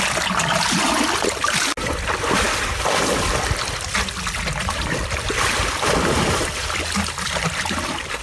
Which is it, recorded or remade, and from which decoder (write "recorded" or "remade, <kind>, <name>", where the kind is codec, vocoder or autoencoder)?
recorded